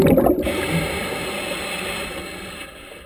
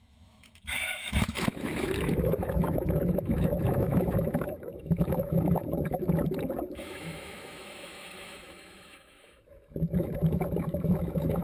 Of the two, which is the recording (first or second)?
first